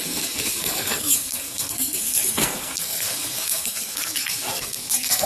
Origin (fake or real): fake